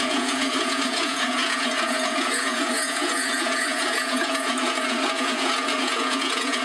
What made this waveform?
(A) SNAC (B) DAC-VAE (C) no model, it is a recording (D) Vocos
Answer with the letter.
D